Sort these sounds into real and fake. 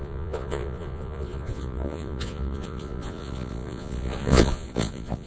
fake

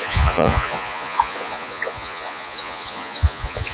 fake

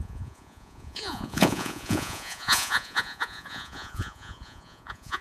fake